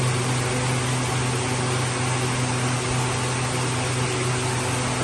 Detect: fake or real real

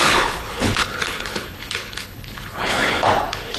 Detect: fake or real fake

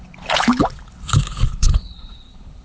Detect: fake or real fake